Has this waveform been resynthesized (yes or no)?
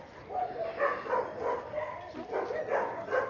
no